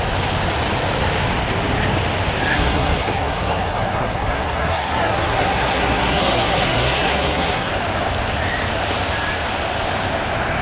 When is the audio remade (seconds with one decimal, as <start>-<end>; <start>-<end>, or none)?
2.5-7.7

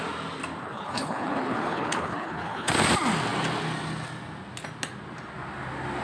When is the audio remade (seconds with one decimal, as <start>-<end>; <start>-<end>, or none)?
0.6-2.7